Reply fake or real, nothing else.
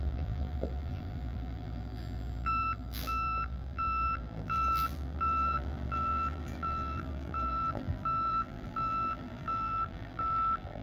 fake